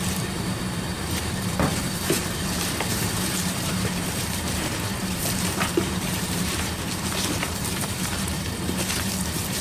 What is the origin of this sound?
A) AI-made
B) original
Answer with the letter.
A